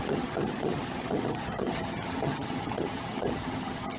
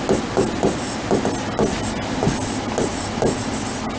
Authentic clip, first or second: second